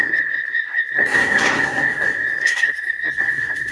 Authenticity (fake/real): fake